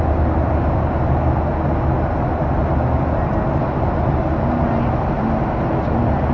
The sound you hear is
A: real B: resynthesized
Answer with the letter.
A